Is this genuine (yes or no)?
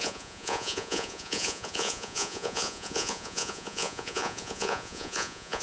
no